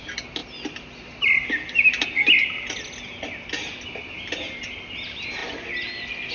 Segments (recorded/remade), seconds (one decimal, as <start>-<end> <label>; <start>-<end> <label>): 0.0-6.3 recorded